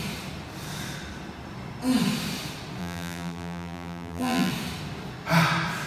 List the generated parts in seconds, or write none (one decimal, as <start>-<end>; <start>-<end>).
2.8-4.5